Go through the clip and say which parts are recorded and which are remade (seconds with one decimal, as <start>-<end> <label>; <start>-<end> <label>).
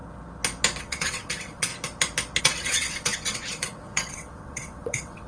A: 0.0-0.8 recorded; 0.8-1.7 remade; 1.7-2.4 recorded; 2.4-5.3 remade